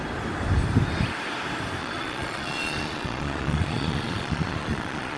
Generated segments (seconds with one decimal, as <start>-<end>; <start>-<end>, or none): 1.8-5.2